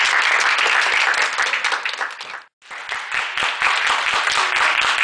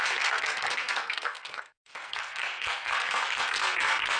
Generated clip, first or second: second